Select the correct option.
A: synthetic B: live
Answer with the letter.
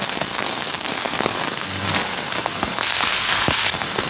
A